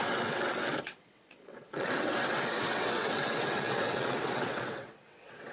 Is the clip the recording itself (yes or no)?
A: no